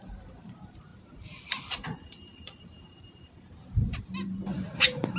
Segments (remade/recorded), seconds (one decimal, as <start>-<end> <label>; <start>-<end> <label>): 0.0-5.2 remade